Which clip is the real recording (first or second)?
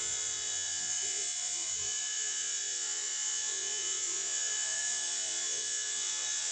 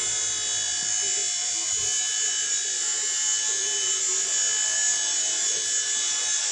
second